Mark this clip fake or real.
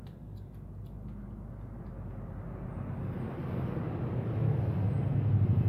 real